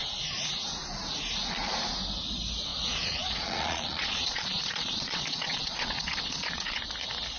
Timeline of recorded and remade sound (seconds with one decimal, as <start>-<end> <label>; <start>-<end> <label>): 0.0-2.7 recorded; 2.7-6.9 remade; 6.9-7.4 recorded